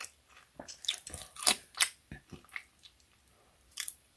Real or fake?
fake